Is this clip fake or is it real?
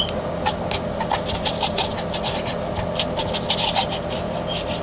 real